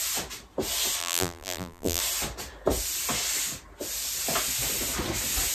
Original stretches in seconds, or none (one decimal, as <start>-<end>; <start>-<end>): 0.0-1.0; 2.0-5.5